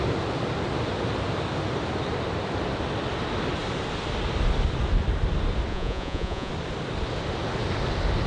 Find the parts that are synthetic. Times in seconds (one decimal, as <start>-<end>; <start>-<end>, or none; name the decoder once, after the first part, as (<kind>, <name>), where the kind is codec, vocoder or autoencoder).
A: 5.7-6.5 (vocoder, Vocos)